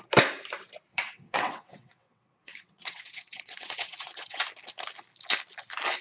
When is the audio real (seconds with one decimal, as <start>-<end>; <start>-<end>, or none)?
0.0-0.9; 4.4-6.0